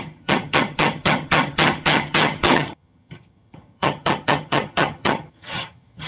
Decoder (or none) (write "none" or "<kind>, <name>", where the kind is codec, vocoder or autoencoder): vocoder, HiFi-GAN